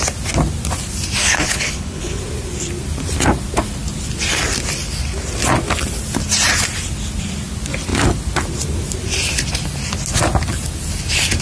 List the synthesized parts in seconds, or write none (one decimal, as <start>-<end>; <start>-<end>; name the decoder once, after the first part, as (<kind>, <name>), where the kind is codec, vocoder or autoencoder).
1.2-2.2 (codec, HILCodec)